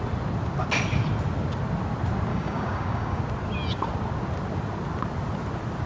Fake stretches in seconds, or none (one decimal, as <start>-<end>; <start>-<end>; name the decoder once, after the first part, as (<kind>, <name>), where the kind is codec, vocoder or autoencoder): 2.3-3.2 (codec, DAC)